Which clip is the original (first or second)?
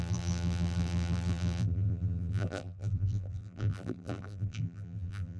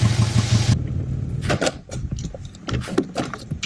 second